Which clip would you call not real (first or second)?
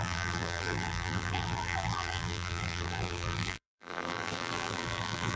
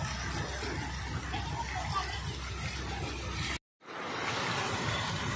first